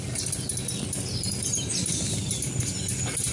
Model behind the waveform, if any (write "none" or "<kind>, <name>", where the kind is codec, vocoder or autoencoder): none